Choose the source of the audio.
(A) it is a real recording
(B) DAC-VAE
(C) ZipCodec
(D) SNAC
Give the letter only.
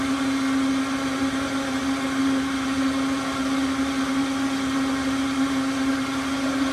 A